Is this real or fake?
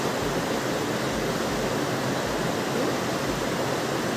real